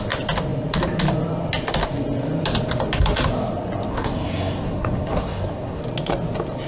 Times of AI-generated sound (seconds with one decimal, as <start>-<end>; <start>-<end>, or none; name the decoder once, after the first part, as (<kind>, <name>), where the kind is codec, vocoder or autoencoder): 3.9-5.8 (codec, SNAC)